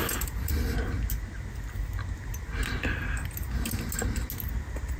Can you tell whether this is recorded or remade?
recorded